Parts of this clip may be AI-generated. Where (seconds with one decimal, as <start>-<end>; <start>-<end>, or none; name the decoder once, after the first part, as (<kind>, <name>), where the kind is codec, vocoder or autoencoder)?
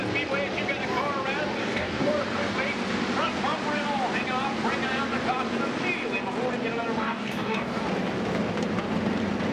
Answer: 1.6-2.1 (codec, DAC); 7.0-7.8